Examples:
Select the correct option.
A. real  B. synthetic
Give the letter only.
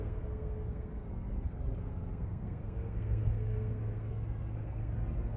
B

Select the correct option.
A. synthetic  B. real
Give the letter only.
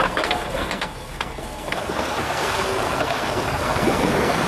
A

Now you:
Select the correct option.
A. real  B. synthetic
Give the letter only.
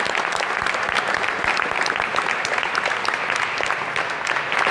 A